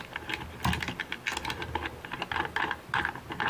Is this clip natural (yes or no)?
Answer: yes